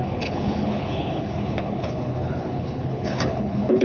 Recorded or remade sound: remade